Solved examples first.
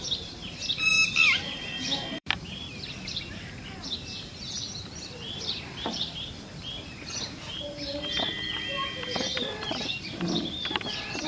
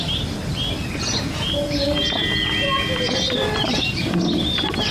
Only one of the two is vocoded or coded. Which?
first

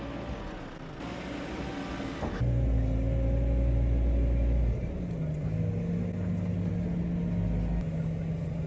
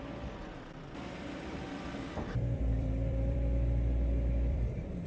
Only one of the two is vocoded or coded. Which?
second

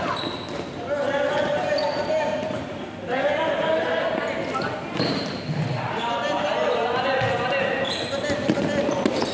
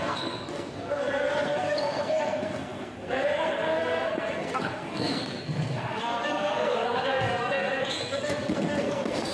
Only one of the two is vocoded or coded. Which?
second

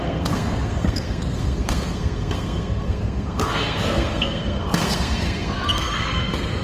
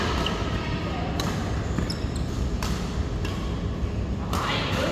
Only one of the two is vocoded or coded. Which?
first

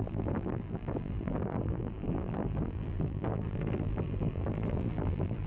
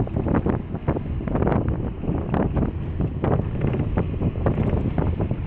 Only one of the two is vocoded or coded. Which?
first